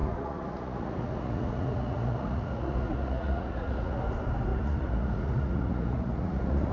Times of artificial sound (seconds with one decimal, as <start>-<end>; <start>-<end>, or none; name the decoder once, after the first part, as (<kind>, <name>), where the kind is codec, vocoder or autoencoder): 0.0-4.0 (vocoder, Vocos); 4.5-6.7